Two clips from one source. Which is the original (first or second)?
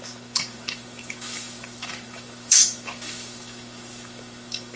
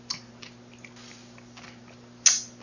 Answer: second